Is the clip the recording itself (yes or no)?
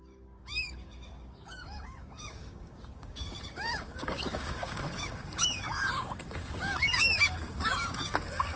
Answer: no